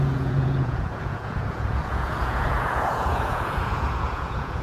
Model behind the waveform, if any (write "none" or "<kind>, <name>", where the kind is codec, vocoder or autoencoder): vocoder, Vocos